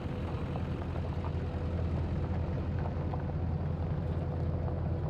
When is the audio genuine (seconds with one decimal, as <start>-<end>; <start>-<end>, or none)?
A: 0.0-5.1